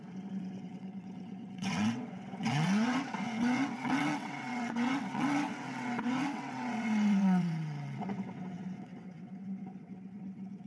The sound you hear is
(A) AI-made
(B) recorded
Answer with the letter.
A